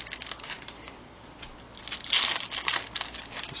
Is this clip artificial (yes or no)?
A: no